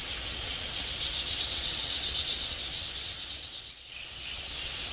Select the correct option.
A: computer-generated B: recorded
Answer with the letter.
A